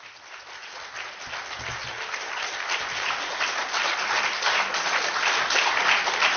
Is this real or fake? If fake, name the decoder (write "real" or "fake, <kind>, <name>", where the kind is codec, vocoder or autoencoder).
real